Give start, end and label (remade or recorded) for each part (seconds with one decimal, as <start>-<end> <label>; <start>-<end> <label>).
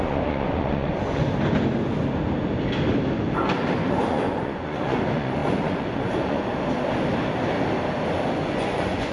0.0-1.2 remade; 1.2-3.9 recorded; 3.9-6.5 remade; 6.5-8.3 recorded; 8.3-9.1 remade